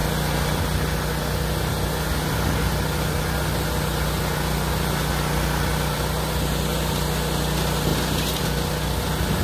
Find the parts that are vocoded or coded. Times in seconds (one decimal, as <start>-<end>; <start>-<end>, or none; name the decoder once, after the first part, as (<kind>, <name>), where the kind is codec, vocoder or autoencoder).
none